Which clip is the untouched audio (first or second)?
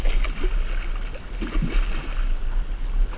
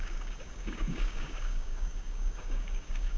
first